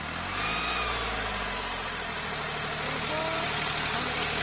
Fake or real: real